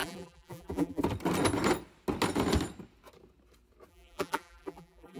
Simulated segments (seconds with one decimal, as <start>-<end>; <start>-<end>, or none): 0.0-1.0; 3.9-5.2